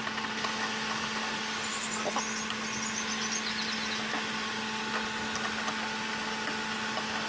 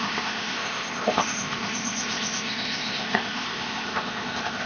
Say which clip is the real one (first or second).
first